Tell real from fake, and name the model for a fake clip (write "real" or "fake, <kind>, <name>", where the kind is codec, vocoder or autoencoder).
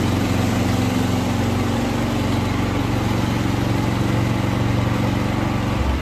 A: real